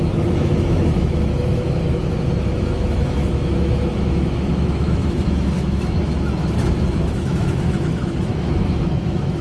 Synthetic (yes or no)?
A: yes